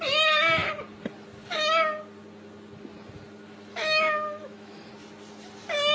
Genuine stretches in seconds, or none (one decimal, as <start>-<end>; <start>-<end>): 0.0-3.7; 4.9-5.9